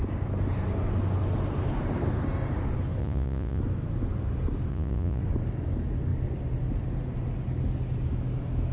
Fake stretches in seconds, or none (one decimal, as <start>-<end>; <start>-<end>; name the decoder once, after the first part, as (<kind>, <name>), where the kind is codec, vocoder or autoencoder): 3.0-3.6 (vocoder, Vocos); 4.7-5.2

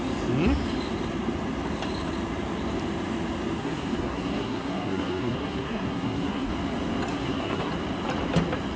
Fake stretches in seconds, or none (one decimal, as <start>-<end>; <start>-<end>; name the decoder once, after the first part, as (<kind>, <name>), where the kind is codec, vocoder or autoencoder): 3.6-6.5 (codec, SNAC); 7.1-7.7

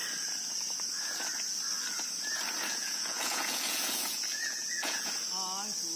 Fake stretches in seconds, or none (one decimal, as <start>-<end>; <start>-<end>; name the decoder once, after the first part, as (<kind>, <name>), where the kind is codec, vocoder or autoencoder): 2.7-5.1 (vocoder, Vocos)

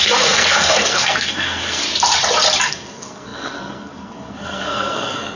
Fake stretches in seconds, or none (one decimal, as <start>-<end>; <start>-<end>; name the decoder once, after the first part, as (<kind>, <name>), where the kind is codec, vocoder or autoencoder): 0.0-1.8 (codec, SNAC); 2.7-5.4